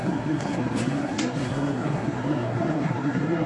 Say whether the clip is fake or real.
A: fake